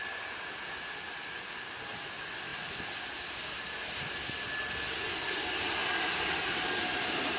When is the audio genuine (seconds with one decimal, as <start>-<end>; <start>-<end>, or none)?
0.0-7.4